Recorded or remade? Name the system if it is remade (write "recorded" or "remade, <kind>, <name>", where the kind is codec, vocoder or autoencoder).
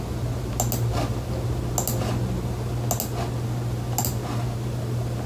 recorded